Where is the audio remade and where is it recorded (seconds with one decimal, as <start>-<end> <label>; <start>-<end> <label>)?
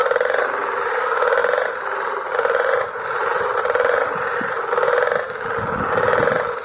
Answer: 0.0-0.5 remade; 0.5-1.4 recorded; 1.4-4.7 remade; 4.7-6.6 recorded